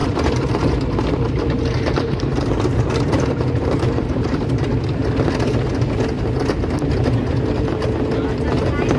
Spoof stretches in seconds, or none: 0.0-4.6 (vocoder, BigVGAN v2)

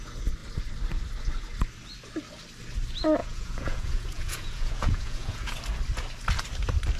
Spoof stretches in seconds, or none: 3.2-5.6 (vocoder, Vocos)

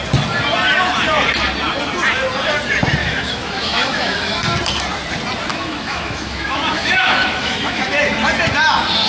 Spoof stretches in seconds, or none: 3.0-4.4 (autoencoder, DAC-VAE); 5.5-8.0

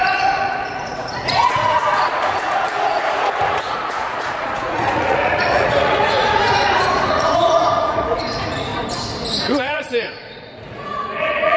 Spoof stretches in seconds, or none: 0.0-8.7 (vocoder, Vocos); 9.4-11.6